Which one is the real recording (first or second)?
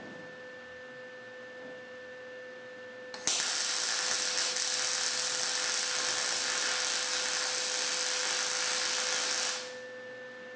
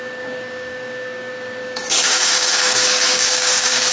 first